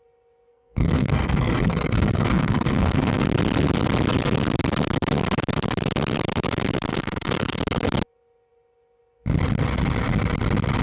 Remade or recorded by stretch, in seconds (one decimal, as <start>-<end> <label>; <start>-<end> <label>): 0.0-0.5 recorded; 0.5-3.2 remade; 3.2-6.9 recorded; 6.9-7.6 remade; 7.6-10.8 recorded